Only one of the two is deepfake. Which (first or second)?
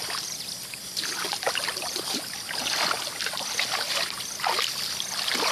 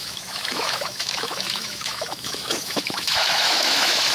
second